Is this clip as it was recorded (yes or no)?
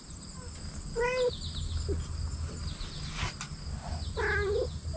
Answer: yes